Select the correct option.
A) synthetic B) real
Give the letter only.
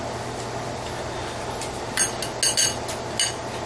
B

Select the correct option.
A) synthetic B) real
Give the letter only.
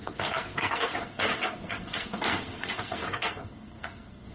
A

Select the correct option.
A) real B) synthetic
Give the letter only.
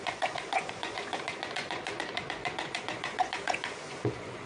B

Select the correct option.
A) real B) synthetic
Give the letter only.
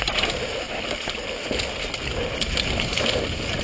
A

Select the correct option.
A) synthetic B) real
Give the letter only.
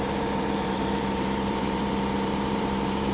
A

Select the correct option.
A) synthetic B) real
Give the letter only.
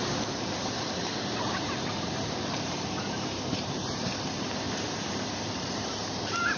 A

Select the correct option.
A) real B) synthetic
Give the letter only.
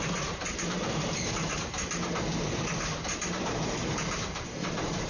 B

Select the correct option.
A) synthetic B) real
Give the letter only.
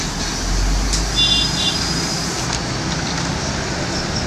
B